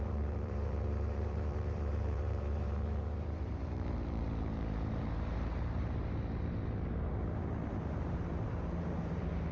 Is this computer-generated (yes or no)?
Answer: yes